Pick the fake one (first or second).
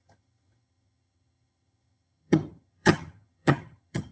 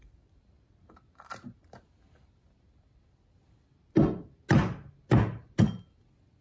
first